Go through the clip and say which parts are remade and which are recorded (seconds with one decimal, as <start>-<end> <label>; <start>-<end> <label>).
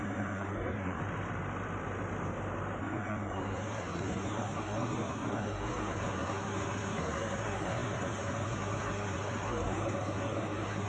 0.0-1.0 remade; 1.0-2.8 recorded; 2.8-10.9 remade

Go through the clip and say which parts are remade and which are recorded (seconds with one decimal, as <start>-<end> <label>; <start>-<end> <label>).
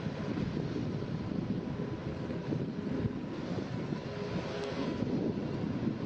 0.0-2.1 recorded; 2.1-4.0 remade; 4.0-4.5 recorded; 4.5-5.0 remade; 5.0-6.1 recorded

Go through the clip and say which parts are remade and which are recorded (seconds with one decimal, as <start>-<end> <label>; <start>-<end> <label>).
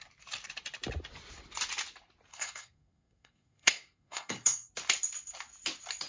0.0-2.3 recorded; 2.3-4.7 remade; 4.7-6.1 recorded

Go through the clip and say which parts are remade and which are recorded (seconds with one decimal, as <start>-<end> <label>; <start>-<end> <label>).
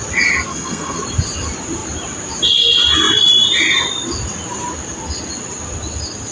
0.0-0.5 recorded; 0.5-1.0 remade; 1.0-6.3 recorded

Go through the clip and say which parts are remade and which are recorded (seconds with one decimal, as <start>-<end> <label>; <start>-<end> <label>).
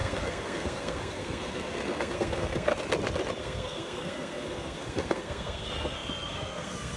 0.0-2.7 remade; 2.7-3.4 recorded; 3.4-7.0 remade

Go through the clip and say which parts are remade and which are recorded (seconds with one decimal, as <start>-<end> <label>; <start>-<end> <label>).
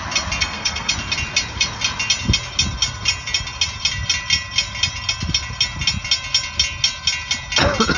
0.0-0.4 recorded; 0.4-0.9 remade; 0.9-8.0 recorded